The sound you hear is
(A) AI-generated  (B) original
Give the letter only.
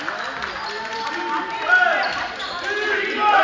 B